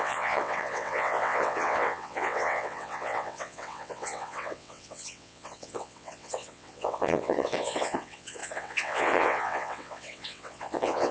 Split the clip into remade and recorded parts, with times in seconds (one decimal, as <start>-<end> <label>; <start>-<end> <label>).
0.0-11.1 remade